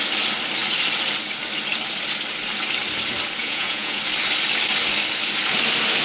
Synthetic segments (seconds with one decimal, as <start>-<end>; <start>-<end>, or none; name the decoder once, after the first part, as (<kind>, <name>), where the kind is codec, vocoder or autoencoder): 3.4-4.0 (vocoder, Vocos)